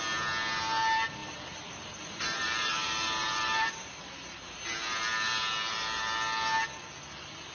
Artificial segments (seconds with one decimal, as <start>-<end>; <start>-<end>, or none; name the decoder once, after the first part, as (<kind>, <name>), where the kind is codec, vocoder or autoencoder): 1.2-4.6 (vocoder, BigVGAN v2)